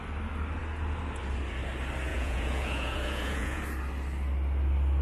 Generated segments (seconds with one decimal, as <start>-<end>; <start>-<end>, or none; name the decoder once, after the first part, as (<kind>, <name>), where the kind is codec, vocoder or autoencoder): 2.1-3.6 (vocoder, Vocos)